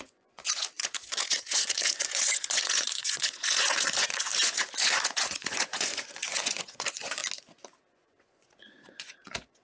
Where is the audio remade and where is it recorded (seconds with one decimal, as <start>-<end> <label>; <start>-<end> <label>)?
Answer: 0.0-7.2 remade; 7.2-7.9 recorded; 7.9-9.6 remade